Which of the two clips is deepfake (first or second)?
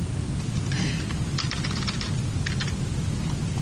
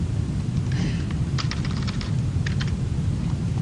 second